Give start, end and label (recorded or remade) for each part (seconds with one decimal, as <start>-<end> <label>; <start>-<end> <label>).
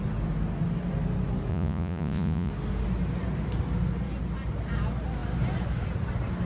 0.0-1.5 recorded; 1.5-2.5 remade; 2.5-6.5 recorded